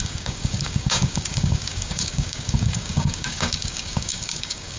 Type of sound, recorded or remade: remade